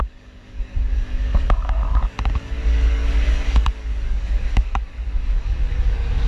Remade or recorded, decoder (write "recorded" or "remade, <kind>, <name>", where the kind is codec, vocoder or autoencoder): remade, codec, DAC